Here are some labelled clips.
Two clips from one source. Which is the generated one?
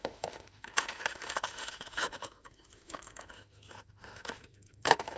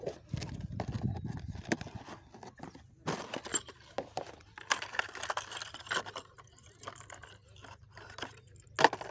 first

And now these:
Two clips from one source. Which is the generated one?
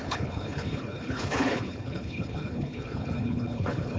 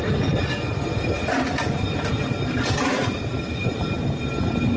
first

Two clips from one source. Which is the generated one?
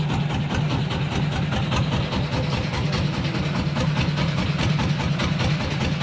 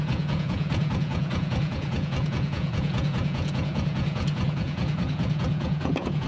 second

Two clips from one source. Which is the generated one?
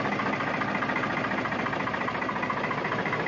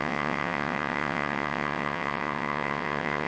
second